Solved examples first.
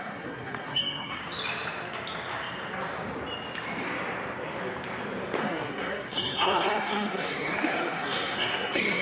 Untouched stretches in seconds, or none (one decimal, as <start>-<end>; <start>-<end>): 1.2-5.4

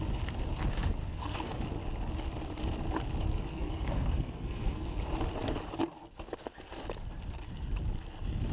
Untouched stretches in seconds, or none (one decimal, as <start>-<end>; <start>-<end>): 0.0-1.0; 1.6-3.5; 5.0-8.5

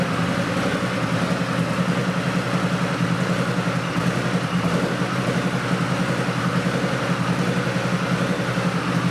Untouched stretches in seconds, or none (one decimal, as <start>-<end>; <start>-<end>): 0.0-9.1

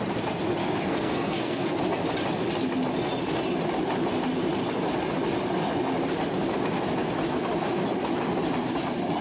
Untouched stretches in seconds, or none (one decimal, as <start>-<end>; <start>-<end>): 0.0-0.6; 1.8-9.2

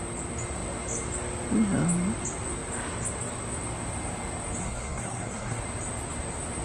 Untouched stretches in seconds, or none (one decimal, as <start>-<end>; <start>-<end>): 0.0-4.6; 5.6-6.6

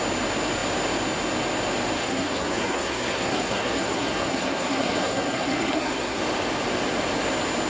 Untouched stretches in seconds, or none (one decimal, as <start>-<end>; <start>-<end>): 0.0-2.0; 6.2-7.7